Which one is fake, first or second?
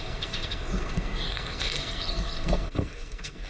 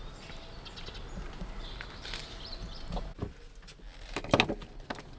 first